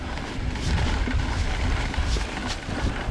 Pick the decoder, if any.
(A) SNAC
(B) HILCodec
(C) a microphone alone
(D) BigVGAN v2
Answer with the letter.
C